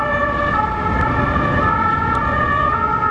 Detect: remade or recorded remade